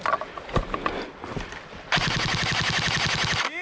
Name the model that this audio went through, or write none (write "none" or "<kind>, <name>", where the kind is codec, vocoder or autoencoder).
none